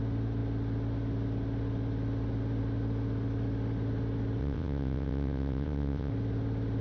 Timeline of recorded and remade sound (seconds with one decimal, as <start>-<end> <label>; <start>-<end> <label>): 0.0-4.4 recorded; 4.4-6.1 remade; 6.1-6.8 recorded